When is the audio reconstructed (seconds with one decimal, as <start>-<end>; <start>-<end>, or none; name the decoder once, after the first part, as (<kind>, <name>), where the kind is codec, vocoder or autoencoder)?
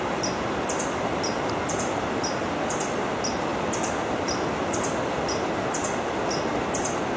none